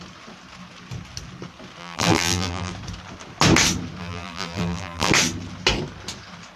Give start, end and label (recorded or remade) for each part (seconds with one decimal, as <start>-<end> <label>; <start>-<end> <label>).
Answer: 0.0-1.8 recorded; 1.8-2.7 remade; 2.7-4.0 recorded; 4.0-5.1 remade; 5.1-6.6 recorded